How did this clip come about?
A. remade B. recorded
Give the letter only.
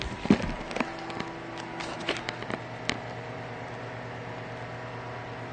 B